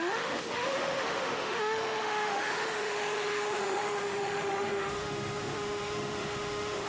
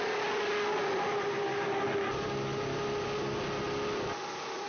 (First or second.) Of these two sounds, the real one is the second